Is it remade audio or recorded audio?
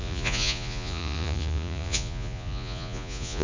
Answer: remade